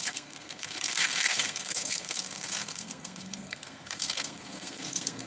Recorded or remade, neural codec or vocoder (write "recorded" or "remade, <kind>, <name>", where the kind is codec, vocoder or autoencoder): remade, codec, SNAC